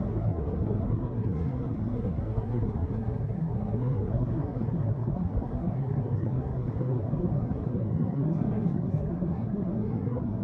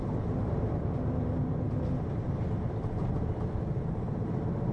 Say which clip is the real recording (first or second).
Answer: second